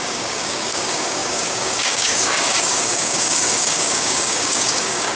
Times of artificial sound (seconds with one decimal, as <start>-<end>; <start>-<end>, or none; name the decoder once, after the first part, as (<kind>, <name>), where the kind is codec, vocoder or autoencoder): 0.0-5.2 (codec, DAC)